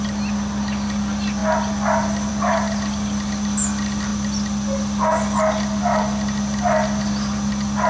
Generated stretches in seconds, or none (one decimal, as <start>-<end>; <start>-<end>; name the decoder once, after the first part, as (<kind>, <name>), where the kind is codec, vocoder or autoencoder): none

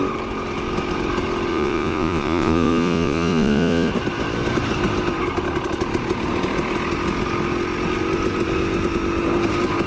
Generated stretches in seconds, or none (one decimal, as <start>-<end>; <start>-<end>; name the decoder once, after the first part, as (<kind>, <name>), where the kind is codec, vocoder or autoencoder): 1.5-3.9 (vocoder, Vocos)

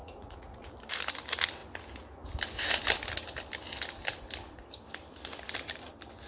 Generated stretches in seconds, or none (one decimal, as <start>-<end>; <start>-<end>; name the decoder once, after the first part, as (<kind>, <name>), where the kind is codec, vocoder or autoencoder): 0.0-0.7 (vocoder, Vocos)

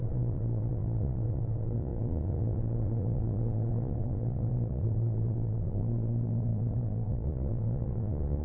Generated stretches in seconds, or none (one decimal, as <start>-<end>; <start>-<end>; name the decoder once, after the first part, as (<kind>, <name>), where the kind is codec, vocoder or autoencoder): 0.0-8.4 (vocoder, Vocos)

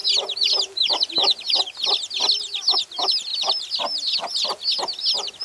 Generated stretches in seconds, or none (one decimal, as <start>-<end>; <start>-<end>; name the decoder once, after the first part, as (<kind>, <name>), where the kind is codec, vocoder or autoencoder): none

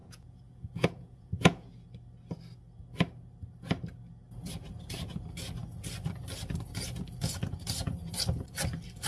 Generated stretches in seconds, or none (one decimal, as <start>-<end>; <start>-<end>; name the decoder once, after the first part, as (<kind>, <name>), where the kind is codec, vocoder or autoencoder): 0.0-1.7 (vocoder, Vocos)

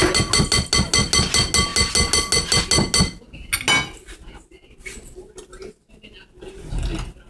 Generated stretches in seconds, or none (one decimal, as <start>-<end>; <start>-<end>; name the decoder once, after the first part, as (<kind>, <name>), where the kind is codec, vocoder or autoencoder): none

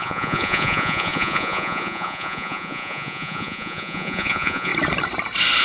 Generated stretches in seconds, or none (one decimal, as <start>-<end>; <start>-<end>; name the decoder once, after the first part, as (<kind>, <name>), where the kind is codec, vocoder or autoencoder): 0.0-4.7 (vocoder, Vocos)